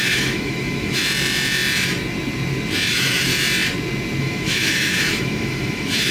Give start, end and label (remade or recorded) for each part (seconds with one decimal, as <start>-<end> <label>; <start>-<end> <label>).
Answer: 0.0-1.0 remade; 1.0-2.9 recorded; 2.9-3.3 remade; 3.3-4.2 recorded; 4.2-6.1 remade